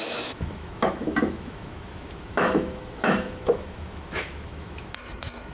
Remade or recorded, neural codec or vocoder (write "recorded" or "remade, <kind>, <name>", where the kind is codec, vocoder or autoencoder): remade, autoencoder, DAC-VAE